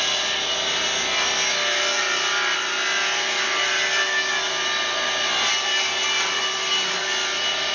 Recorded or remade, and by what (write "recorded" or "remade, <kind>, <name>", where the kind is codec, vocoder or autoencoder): recorded